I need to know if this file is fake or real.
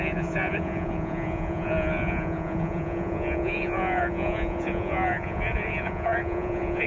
fake